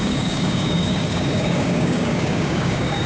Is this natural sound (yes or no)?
no